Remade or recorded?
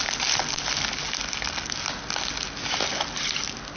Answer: recorded